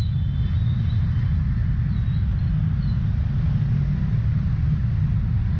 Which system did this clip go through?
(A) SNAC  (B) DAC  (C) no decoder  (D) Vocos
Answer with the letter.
C